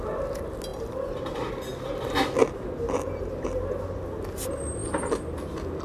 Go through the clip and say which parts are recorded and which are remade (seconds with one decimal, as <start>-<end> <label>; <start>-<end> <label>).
0.0-5.8 recorded